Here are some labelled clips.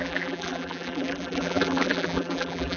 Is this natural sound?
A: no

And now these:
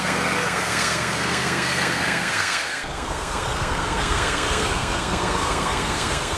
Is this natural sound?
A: no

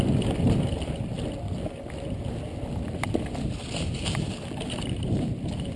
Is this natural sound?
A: yes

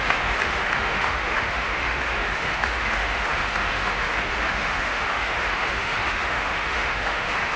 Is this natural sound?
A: no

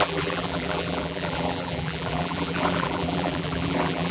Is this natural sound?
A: no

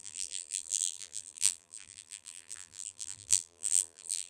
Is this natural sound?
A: no